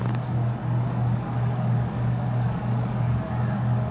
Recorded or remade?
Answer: remade